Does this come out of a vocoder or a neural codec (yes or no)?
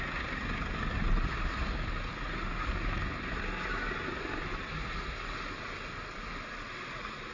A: no